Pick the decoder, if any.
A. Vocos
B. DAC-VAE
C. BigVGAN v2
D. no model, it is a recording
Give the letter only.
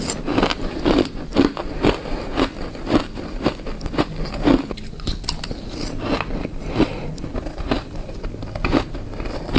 D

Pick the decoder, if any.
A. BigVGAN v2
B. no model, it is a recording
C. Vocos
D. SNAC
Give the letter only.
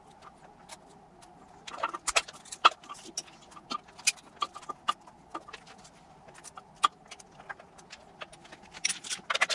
B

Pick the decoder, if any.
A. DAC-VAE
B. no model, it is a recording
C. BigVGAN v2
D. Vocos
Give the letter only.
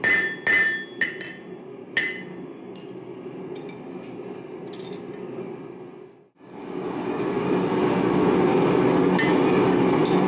B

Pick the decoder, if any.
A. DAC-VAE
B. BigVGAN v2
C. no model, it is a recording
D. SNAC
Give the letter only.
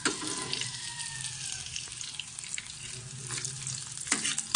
C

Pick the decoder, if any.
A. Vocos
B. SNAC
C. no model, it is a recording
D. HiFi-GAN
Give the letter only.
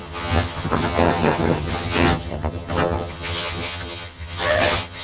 D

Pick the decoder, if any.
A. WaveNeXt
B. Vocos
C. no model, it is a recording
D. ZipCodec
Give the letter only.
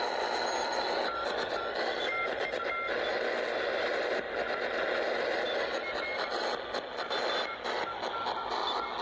C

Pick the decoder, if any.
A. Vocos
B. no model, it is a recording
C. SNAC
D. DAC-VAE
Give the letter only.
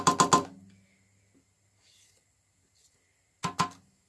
B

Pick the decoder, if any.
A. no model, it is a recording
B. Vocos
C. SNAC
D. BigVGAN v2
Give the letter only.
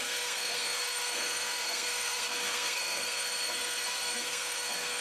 C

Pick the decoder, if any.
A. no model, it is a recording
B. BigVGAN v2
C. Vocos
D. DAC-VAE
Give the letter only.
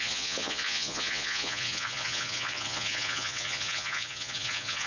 C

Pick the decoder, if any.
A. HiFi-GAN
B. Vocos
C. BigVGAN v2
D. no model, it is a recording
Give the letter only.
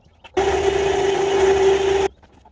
D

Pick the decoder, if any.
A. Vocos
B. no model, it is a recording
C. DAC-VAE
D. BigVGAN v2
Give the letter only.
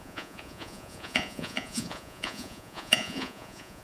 A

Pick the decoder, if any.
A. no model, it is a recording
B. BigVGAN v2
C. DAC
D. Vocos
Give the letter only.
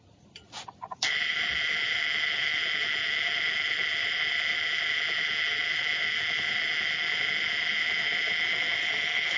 B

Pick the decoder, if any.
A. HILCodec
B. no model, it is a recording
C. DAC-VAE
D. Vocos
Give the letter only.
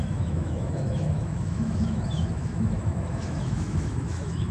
C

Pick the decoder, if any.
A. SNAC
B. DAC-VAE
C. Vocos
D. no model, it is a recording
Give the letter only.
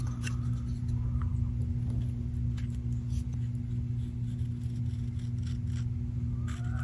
D